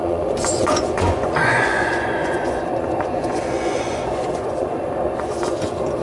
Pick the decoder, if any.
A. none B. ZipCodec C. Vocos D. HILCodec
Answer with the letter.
C